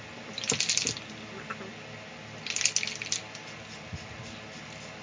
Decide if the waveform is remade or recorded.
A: recorded